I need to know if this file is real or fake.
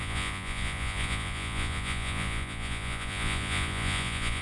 fake